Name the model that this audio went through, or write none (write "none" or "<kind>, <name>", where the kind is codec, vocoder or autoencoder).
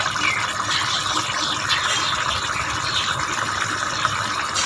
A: vocoder, BigVGAN v2